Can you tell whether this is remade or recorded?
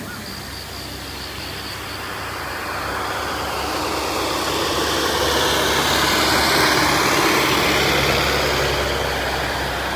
recorded